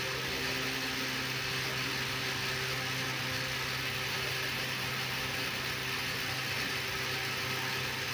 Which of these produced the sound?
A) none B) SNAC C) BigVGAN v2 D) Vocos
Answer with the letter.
A